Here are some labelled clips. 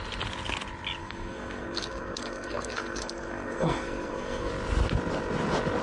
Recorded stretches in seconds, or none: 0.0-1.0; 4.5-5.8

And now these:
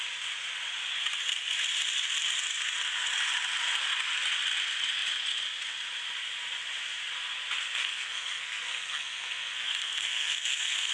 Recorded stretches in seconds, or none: 0.0-7.8

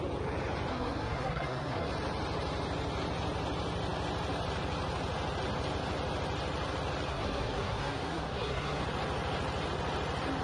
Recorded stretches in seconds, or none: 0.0-0.7; 1.9-7.1; 8.8-10.4

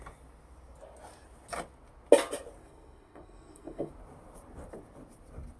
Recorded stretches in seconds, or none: 0.0-2.6; 3.9-5.6

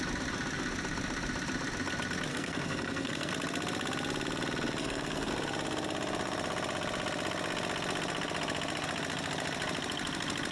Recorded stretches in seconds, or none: 0.0-2.3; 3.3-4.8; 5.3-10.5

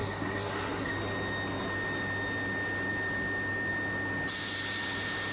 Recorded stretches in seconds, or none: 0.9-5.3